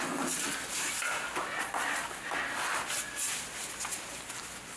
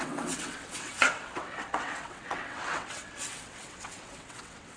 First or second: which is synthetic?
second